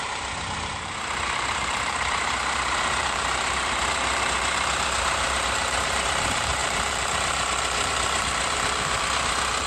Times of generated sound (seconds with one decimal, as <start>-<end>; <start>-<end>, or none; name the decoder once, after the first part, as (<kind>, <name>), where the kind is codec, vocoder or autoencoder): 0.0-9.7 (vocoder, BigVGAN v2)